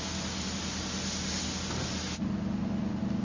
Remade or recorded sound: recorded